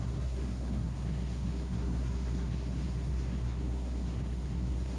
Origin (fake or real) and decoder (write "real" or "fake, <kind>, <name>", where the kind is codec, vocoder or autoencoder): fake, codec, SNAC